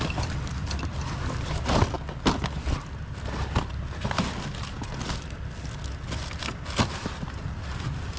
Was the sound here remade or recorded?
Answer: recorded